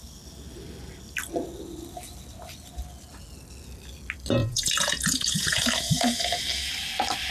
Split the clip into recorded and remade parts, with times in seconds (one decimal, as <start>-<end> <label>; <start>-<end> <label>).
0.0-4.4 recorded; 4.4-6.4 remade; 6.4-7.3 recorded